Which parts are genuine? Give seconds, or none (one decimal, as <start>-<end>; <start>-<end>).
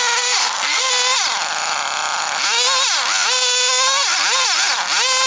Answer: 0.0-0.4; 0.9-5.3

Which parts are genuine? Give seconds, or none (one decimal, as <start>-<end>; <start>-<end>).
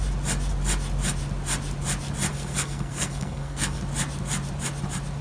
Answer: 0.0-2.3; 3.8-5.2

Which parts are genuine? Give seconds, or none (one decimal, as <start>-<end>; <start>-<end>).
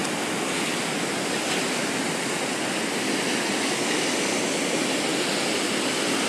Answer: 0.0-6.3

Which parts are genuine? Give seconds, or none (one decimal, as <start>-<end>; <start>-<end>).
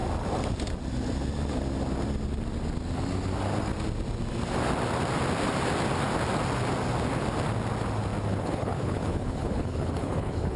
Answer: 0.0-8.3